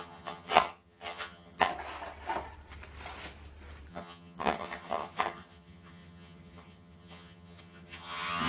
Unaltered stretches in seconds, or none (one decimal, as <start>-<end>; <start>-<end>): 1.7-3.9